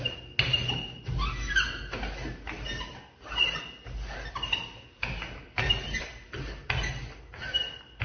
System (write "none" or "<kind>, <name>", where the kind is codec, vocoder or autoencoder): none